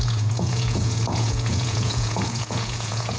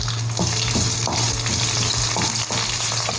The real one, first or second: second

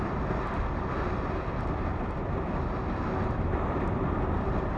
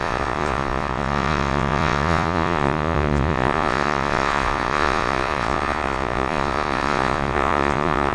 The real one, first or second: first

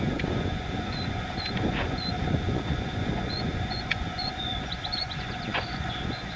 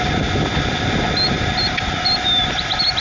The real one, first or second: second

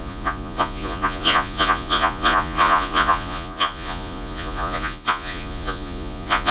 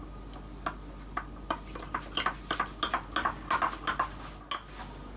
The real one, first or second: second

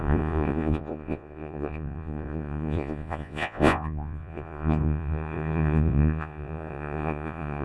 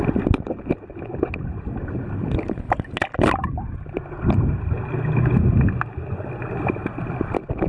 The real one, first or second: second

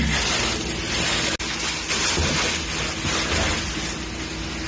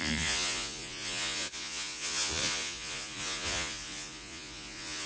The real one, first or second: first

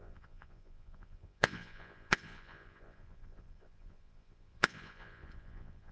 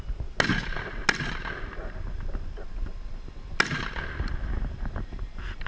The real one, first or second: second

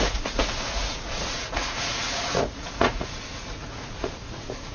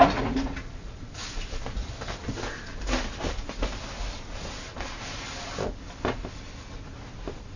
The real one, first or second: second